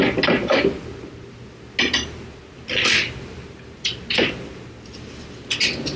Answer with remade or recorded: recorded